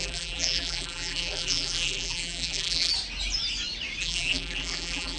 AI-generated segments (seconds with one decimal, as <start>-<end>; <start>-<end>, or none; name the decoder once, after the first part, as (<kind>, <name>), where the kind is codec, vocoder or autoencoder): 0.0-2.9 (vocoder, BigVGAN v2); 4.0-5.2